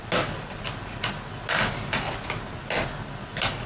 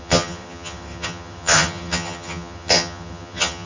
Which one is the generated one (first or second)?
second